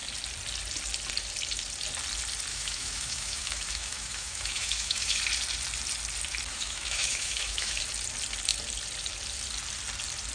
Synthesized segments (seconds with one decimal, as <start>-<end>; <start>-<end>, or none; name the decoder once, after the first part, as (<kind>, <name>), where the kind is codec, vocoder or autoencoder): 2.5-5.2 (autoencoder, DAC-VAE); 6.5-7.8